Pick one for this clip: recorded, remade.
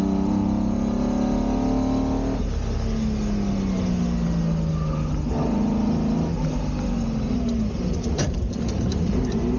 recorded